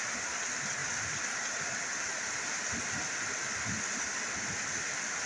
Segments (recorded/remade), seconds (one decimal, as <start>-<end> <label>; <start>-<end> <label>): 0.0-5.3 recorded